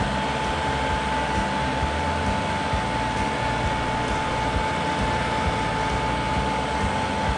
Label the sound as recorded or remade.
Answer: recorded